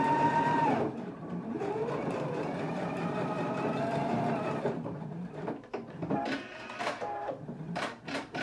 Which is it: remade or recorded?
remade